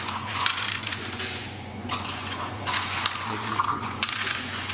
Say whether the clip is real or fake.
fake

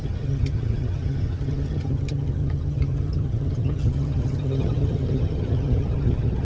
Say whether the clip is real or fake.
fake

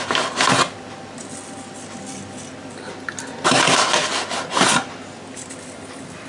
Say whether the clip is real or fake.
real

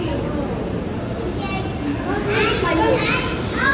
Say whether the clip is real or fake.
real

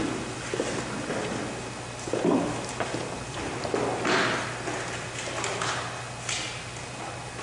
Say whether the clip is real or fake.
real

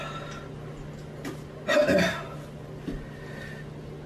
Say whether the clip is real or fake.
real